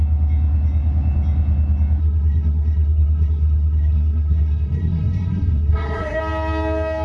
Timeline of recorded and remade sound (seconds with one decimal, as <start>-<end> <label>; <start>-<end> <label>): 0.0-2.0 recorded; 2.0-6.2 remade; 6.2-7.0 recorded